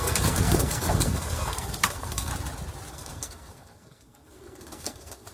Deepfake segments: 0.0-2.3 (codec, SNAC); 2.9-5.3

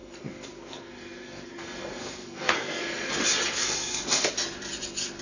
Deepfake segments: 0.0-3.1 (codec, SNAC); 3.6-4.3

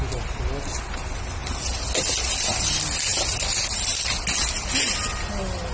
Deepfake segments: none

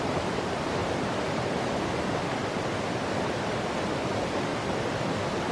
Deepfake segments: 0.0-0.8 (vocoder, BigVGAN v2); 4.1-4.5